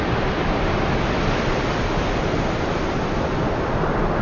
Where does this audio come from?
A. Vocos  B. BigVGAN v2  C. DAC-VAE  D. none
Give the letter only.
D